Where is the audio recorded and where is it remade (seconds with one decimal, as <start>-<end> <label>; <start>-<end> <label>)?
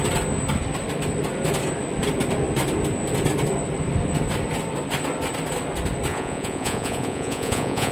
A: 0.0-6.1 recorded; 6.1-7.9 remade